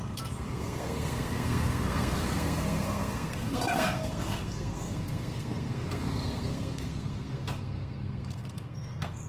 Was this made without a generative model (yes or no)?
no